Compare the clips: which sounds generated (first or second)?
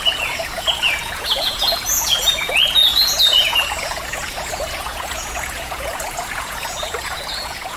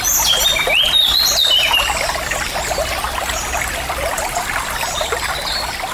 first